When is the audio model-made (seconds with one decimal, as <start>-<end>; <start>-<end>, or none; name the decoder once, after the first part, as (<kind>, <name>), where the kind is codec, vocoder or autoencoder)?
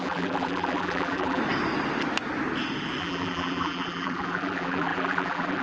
0.0-1.4 (vocoder, BigVGAN v2); 3.0-5.6